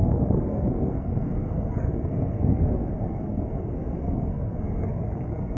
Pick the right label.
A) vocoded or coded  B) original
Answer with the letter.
A